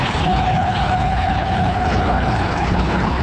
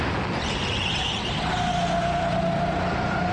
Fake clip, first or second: first